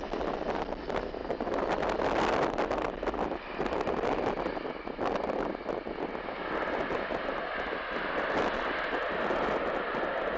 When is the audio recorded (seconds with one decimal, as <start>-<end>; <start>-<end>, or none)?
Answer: 0.0-10.4

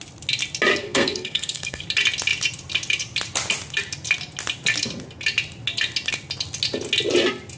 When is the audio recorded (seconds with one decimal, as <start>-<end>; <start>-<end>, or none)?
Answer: 0.0-0.7; 1.8-7.6

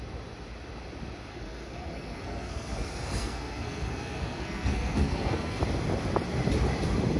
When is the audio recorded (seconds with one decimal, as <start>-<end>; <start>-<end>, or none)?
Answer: 0.0-1.3; 5.6-7.2

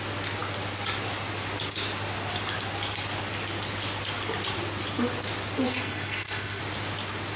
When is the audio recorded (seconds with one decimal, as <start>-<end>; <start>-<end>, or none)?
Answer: 0.0-5.7; 6.6-7.4

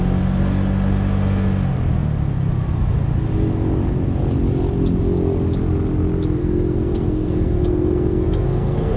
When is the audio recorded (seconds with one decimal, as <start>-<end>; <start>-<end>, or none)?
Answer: 0.0-6.4

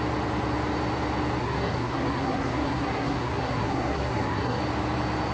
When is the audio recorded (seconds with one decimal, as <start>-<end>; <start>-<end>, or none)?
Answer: 0.0-1.4; 4.6-5.3

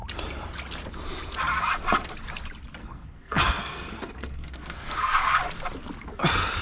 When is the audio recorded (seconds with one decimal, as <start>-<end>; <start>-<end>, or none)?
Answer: 0.0-2.8; 5.4-6.6

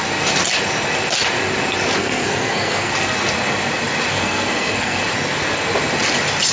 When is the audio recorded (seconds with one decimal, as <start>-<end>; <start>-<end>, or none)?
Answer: 0.0-2.0; 2.9-4.1; 5.0-6.5